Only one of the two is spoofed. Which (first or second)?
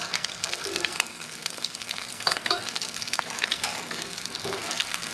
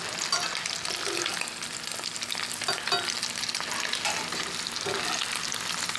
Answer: first